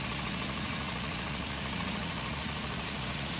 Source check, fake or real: fake